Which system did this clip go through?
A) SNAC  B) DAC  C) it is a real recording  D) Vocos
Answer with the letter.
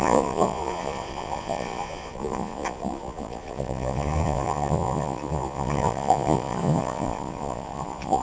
D